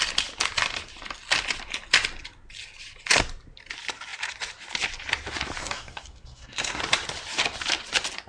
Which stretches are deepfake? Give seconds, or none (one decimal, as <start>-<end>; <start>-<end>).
5.6-6.8